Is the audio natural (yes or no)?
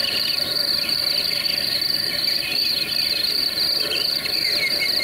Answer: yes